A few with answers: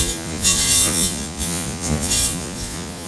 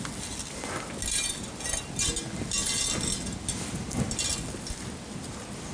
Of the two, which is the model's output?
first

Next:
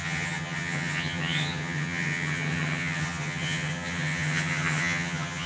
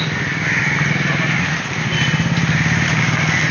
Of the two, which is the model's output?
first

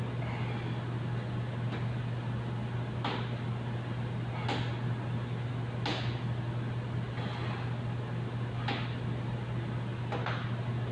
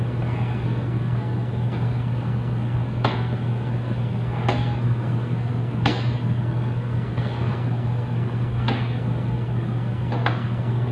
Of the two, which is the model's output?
second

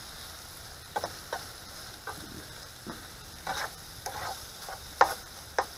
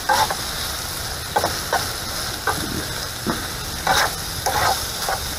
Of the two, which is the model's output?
first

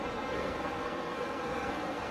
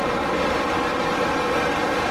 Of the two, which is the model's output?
first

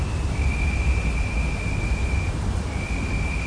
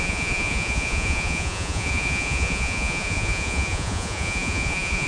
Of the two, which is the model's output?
second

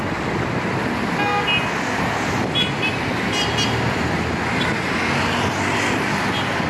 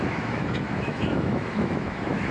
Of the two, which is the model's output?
second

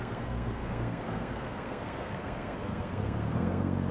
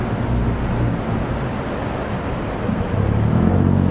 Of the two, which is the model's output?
first